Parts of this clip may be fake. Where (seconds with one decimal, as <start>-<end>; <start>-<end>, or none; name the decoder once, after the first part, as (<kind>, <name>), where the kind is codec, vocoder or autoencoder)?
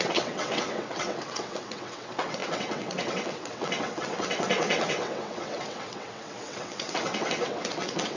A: 0.0-8.2 (vocoder, WaveNeXt)